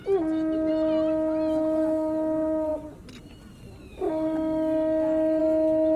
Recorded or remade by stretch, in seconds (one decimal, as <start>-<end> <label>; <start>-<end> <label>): 0.0-6.0 recorded